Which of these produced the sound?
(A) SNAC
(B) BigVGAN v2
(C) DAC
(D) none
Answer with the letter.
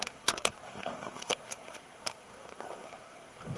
A